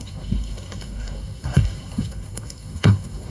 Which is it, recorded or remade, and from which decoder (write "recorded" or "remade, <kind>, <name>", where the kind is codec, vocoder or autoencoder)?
remade, codec, SNAC